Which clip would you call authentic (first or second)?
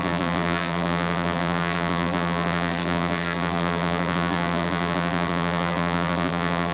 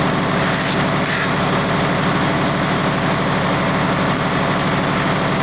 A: second